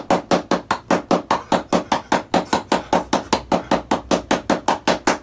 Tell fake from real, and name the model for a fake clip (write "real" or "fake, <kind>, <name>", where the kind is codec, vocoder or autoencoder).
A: real